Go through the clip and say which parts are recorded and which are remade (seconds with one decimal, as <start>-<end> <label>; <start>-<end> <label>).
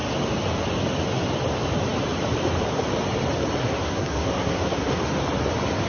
0.0-3.6 recorded; 3.6-5.0 remade; 5.0-5.9 recorded